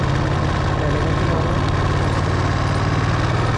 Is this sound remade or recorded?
recorded